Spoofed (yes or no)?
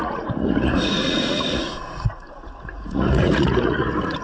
yes